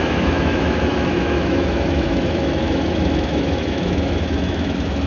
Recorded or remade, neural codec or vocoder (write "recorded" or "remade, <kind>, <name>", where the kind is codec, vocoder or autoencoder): remade, autoencoder, DAC-VAE